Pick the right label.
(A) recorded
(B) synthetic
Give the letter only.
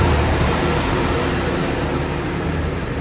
B